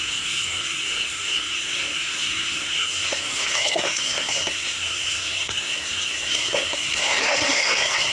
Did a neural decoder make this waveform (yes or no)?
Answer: yes